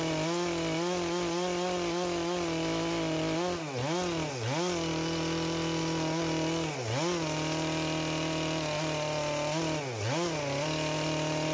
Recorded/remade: recorded